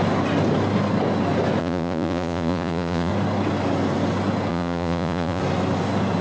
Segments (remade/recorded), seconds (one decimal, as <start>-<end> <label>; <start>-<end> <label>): 0.0-1.6 recorded; 1.6-3.1 remade; 3.1-4.5 recorded; 4.5-5.4 remade; 5.4-6.2 recorded